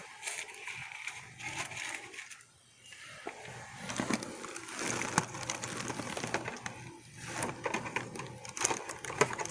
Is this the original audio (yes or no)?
yes